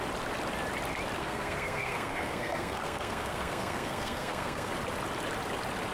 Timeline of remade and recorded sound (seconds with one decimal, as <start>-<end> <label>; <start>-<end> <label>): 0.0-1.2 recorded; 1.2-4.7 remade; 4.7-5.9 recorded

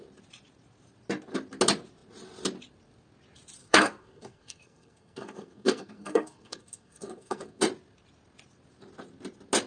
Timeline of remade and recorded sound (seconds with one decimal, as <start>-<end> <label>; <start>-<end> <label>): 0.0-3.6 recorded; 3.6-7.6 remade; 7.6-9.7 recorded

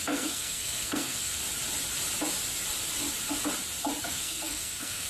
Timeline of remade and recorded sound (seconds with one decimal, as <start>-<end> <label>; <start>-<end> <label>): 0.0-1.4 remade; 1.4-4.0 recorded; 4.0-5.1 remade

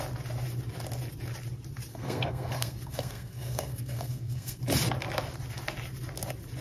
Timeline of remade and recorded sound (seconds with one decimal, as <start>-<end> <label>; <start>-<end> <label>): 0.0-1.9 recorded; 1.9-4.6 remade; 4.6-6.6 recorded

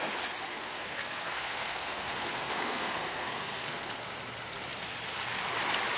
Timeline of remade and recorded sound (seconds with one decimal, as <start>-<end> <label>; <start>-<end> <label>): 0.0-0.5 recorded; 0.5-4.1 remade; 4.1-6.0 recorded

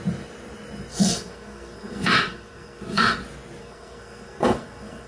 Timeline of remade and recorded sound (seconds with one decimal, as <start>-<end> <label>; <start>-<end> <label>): 0.0-0.9 recorded; 0.9-3.2 remade; 3.2-3.6 recorded; 3.6-5.1 remade